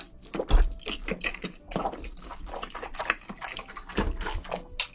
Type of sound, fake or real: real